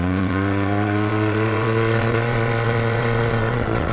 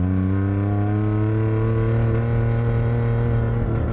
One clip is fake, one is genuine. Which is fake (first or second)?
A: first